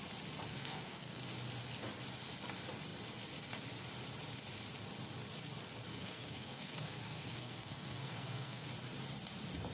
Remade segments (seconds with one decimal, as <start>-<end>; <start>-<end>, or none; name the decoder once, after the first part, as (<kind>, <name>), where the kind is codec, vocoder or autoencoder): 0.5-1.2 (codec, SNAC); 5.9-8.7